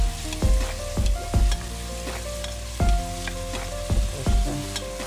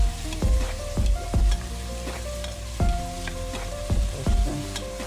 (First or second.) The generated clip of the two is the second